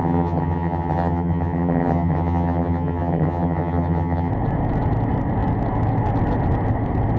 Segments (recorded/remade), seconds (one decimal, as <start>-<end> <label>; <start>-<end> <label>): 0.0-4.3 remade; 4.3-7.2 recorded